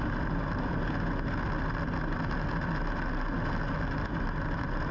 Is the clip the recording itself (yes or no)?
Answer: yes